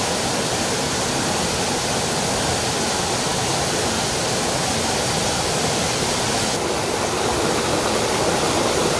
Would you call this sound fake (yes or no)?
no